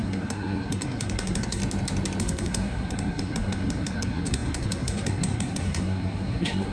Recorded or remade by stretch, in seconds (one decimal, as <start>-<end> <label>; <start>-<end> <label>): 0.0-1.6 remade; 1.6-2.2 recorded; 2.2-6.7 remade